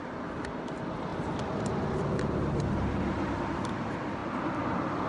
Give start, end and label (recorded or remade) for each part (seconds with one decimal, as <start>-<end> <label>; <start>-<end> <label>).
0.0-5.1 recorded